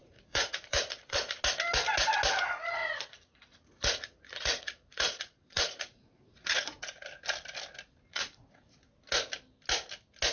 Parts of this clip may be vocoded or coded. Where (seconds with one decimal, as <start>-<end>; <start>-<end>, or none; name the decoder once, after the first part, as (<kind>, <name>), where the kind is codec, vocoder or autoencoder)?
0.0-1.4 (vocoder, Vocos); 2.8-6.8; 8.1-8.7